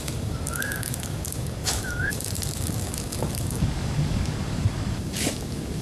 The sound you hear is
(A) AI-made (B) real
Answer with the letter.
A